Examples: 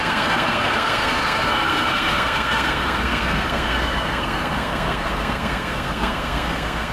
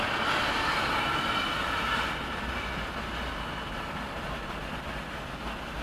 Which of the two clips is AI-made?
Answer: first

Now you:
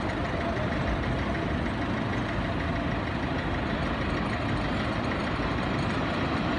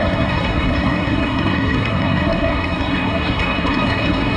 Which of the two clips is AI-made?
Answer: second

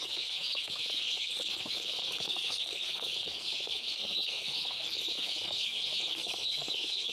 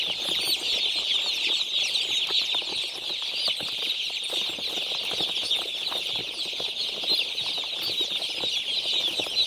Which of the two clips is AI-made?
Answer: first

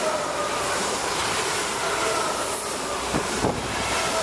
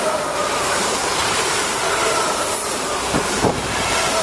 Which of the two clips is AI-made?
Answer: second